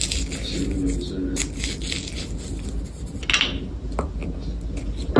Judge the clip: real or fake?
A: real